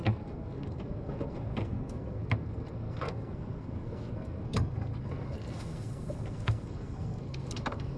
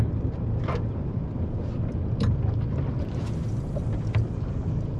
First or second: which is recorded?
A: second